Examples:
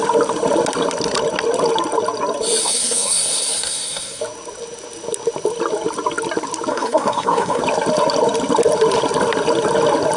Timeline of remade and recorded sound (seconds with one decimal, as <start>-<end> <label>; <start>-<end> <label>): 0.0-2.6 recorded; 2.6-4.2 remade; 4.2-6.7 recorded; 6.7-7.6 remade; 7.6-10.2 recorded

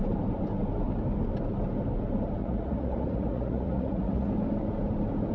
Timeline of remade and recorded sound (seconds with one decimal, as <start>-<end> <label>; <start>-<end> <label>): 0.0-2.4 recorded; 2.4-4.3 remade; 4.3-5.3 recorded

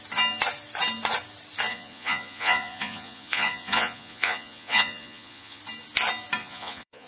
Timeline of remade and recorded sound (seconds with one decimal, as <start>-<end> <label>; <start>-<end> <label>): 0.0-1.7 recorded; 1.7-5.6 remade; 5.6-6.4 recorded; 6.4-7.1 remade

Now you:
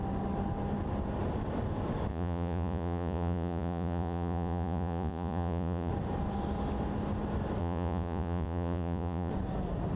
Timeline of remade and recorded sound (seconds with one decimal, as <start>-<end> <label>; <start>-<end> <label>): 0.0-2.1 recorded; 2.1-5.9 remade; 5.9-7.6 recorded; 7.6-9.3 remade; 9.3-10.0 recorded

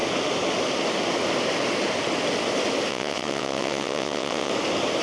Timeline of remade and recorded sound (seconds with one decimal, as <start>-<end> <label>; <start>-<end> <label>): 0.0-2.9 recorded; 2.9-4.5 remade; 4.5-5.0 recorded

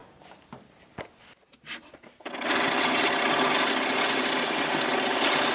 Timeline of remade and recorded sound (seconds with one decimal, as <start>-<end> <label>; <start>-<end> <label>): 0.0-5.5 recorded

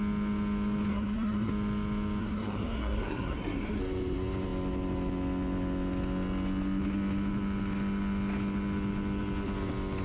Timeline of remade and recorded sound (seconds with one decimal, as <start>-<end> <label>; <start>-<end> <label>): 0.0-0.9 recorded; 0.9-1.5 remade; 1.5-2.2 recorded; 2.2-3.8 remade; 3.8-10.0 recorded